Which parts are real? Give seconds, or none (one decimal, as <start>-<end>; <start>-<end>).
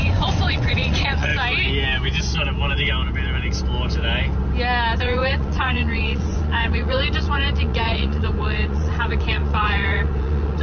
1.3-5.0